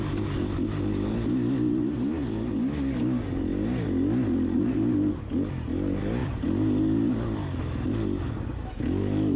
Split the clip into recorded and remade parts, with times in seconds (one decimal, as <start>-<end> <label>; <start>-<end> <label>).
0.0-9.4 recorded

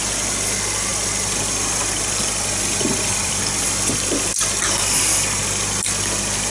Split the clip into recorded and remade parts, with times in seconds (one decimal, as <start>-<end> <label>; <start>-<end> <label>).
0.0-0.9 recorded; 0.9-3.4 remade; 3.4-6.5 recorded

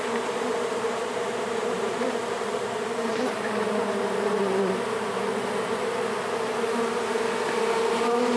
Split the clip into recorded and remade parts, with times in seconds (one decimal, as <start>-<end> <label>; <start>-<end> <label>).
0.0-5.3 remade; 5.3-7.8 recorded; 7.8-8.4 remade